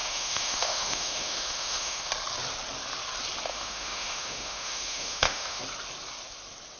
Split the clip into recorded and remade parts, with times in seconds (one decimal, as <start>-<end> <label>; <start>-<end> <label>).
0.0-2.1 remade; 2.1-3.5 recorded; 3.5-5.6 remade; 5.6-6.8 recorded